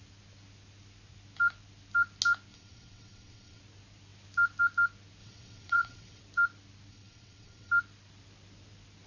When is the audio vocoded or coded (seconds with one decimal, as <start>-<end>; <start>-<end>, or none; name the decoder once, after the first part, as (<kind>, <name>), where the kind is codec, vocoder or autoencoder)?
2.5-3.6 (vocoder, WaveNeXt); 5.2-6.2; 6.9-7.7

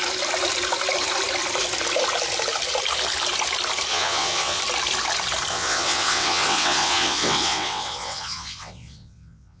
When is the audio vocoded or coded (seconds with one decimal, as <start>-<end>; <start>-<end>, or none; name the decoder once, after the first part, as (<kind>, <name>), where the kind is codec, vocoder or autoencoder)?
3.9-4.6 (vocoder, WaveNeXt); 5.5-9.6

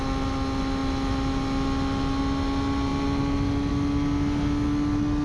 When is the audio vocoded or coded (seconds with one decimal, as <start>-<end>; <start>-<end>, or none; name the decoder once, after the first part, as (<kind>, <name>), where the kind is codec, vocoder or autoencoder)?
none

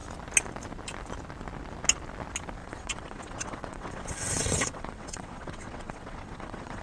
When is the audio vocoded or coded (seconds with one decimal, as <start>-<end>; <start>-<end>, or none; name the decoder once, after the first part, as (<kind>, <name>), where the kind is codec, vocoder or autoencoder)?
2.6-6.8 (vocoder, WaveNeXt)

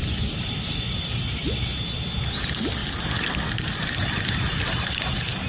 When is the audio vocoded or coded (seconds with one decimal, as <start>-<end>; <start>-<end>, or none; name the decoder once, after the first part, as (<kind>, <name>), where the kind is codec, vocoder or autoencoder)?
none

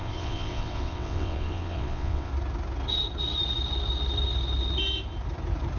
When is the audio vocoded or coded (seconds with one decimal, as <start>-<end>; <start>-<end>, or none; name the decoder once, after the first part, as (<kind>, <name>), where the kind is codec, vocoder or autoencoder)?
0.0-2.3 (vocoder, WaveNeXt)